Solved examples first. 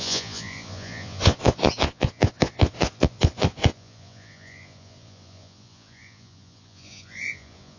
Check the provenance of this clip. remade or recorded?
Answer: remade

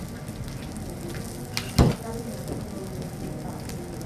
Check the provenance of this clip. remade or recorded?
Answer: recorded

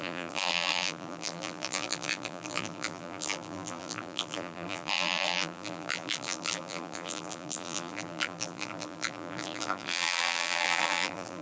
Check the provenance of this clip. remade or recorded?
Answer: remade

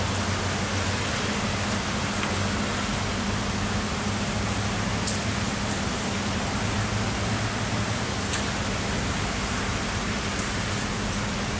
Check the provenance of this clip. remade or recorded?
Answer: recorded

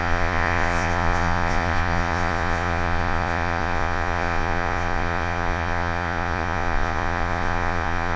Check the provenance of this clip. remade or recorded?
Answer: remade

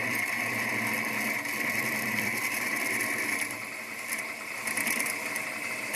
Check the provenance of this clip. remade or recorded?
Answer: remade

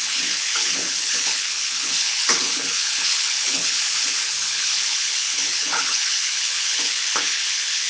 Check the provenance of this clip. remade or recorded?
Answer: remade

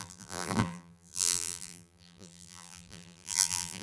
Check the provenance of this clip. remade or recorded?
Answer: remade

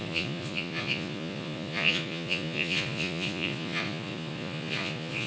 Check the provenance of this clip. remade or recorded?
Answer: remade